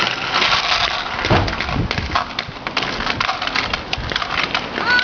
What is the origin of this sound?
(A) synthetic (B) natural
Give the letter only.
B